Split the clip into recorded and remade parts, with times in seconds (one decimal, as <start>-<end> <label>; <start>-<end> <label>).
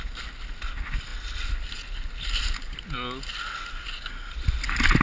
0.0-5.0 recorded